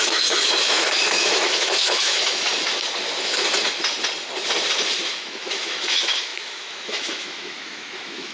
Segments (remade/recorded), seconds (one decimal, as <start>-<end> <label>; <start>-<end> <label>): 0.0-2.5 remade; 2.5-5.1 recorded; 5.1-8.3 remade